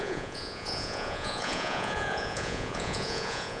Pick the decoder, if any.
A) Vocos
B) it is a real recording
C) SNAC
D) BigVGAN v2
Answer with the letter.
A